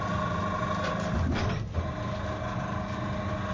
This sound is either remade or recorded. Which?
recorded